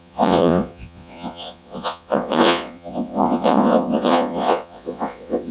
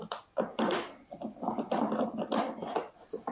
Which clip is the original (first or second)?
second